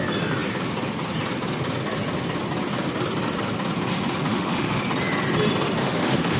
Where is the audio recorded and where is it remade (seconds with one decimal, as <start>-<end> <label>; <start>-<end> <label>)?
0.0-4.3 recorded; 4.3-4.8 remade; 4.8-5.8 recorded; 5.8-6.4 remade